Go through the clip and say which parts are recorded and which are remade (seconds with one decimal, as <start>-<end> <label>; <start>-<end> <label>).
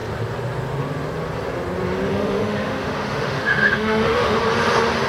0.0-2.1 recorded; 2.1-4.4 remade; 4.4-5.1 recorded